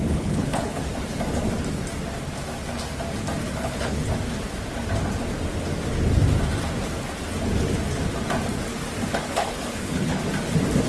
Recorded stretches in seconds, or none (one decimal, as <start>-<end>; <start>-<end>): 0.8-3.4; 4.1-9.1; 10.2-10.9